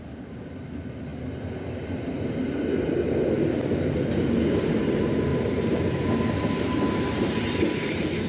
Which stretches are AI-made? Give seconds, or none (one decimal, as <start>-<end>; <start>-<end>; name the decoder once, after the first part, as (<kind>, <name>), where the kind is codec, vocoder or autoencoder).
none